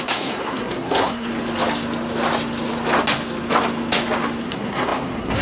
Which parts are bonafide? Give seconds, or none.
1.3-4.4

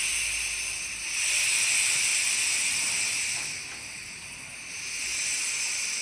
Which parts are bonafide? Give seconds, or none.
0.0-6.0

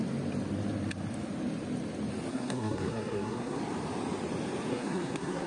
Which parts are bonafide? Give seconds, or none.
0.0-2.3; 3.6-4.7

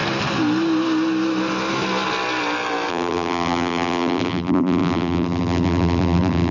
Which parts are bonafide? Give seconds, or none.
0.0-2.9

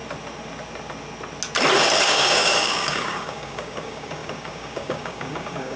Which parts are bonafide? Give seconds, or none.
0.0-2.0